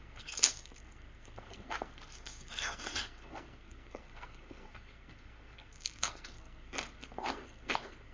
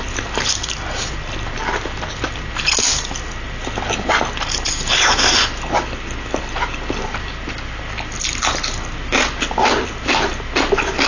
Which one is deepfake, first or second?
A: first